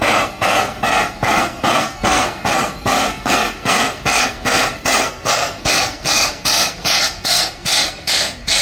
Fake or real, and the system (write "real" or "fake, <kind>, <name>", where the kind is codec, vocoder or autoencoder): fake, codec, SNAC